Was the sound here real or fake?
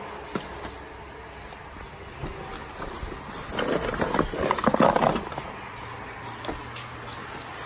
real